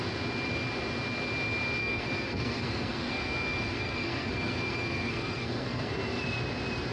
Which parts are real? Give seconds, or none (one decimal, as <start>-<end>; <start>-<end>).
0.0-1.8; 5.9-6.9